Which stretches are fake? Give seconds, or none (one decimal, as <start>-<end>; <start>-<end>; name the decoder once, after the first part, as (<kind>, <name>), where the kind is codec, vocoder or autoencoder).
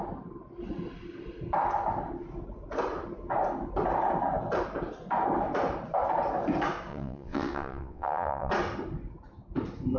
6.9-8.5 (vocoder, WaveNeXt)